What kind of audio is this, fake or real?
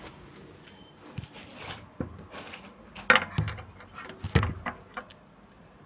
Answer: real